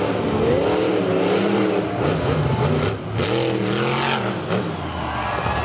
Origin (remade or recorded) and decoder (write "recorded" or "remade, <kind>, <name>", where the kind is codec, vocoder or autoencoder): recorded